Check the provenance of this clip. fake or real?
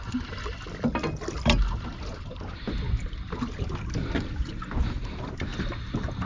real